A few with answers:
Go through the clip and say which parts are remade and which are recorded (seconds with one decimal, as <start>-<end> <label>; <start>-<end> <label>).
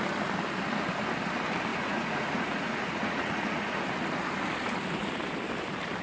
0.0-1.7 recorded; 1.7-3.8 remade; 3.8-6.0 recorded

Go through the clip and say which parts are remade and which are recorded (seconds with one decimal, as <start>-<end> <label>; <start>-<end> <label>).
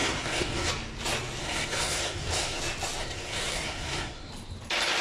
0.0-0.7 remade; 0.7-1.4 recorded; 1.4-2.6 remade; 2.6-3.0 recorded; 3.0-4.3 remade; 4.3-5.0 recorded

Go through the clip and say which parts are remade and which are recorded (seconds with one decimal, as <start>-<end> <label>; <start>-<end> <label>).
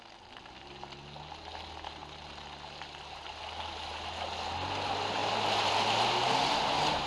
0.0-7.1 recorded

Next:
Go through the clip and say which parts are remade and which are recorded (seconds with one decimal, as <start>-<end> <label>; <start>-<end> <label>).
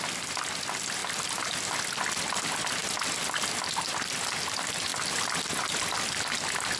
0.0-6.8 recorded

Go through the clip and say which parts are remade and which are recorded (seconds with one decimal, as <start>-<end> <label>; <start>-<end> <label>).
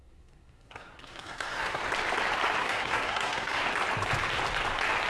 0.0-1.8 remade; 1.8-2.6 recorded; 2.6-3.6 remade; 3.6-5.1 recorded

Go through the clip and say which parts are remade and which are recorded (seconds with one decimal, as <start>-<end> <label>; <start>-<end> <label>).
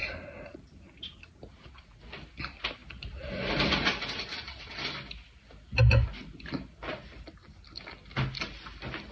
0.0-9.1 recorded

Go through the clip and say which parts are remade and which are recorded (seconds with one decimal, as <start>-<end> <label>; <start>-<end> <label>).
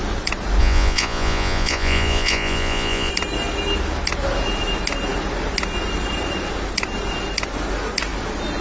0.0-0.6 recorded; 0.6-3.1 remade; 3.1-8.6 recorded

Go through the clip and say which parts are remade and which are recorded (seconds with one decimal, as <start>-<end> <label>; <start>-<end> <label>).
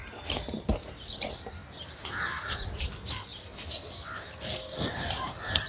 0.0-1.6 recorded; 1.6-2.8 remade; 2.8-4.7 recorded; 4.7-5.7 remade